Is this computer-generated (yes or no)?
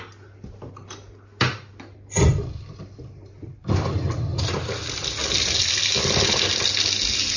no